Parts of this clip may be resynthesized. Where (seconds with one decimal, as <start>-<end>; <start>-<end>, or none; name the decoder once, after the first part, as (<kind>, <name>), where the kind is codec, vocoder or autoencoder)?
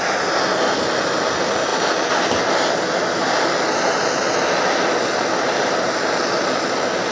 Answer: none